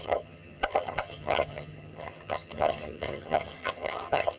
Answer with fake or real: fake